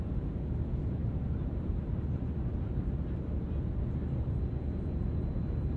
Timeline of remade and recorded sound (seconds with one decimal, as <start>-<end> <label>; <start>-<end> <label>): 0.0-5.8 recorded